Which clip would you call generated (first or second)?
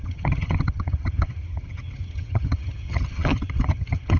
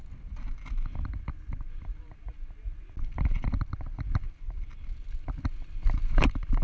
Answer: first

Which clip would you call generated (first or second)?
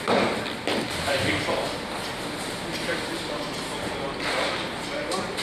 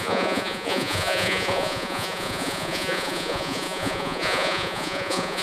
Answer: second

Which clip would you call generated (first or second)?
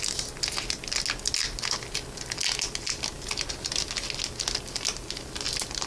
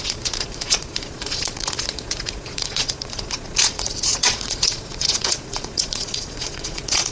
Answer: second